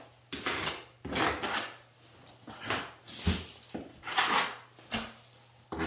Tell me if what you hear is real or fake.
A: real